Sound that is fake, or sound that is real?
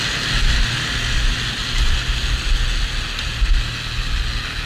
real